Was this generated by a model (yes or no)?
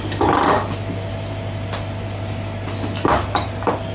no